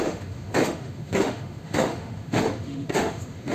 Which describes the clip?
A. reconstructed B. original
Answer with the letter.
A